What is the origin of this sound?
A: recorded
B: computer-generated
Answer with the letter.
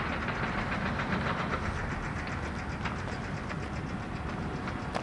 A